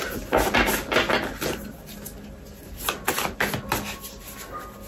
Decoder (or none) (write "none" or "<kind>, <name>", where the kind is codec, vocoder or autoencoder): none